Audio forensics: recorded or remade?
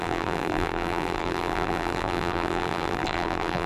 remade